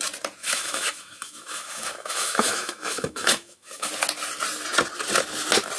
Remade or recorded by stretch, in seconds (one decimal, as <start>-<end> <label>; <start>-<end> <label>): 0.0-0.4 recorded; 0.4-3.9 remade; 3.9-5.8 recorded